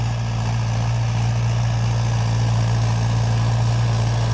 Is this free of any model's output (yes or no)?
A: yes